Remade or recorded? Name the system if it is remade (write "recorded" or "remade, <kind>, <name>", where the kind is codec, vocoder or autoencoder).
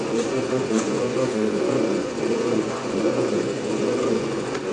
remade, vocoder, Vocos